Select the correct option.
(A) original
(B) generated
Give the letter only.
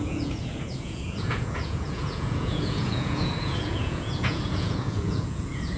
B